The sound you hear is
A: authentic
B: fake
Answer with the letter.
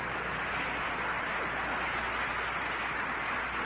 A